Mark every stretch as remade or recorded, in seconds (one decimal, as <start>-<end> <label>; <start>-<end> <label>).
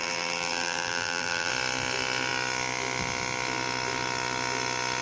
0.0-1.5 remade; 1.5-5.0 recorded